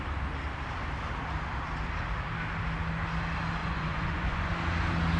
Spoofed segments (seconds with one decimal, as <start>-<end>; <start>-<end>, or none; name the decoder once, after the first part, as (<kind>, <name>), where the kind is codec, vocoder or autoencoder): 3.6-4.5 (vocoder, Vocos)